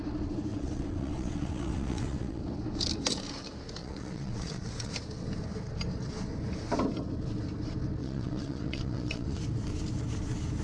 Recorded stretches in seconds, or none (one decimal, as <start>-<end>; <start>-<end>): 0.0-0.5; 2.4-3.8; 4.9-8.0; 9.4-10.6